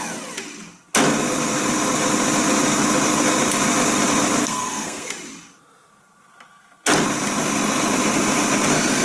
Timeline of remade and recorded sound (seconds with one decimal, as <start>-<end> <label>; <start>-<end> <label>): 0.0-4.4 recorded; 4.4-5.1 remade; 5.1-9.0 recorded